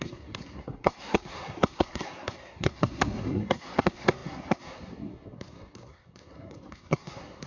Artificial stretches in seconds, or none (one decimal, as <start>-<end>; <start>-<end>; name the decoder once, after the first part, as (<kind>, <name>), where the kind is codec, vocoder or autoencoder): 0.0-7.5 (codec, SNAC)